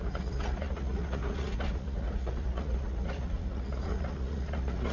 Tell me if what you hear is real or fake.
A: fake